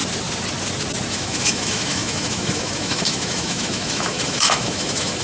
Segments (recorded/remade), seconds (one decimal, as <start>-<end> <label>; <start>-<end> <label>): 0.0-1.1 recorded; 1.1-5.2 remade